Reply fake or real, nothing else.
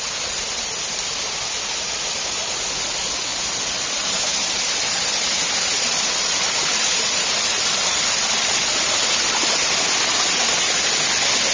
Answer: real